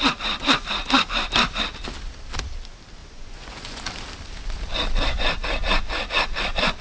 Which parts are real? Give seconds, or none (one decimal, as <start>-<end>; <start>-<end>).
0.0-3.0; 3.8-6.8